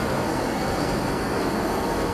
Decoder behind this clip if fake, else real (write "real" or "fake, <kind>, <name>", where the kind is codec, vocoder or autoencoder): fake, codec, SNAC